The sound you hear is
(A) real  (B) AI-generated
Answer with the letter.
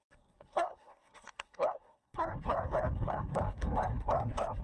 B